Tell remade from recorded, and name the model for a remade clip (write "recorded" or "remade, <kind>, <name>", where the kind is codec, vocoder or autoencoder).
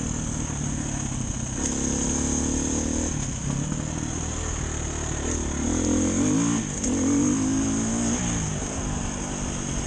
recorded